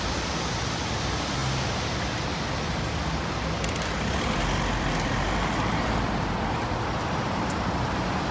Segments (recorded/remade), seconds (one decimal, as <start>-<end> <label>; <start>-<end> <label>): 0.0-8.3 recorded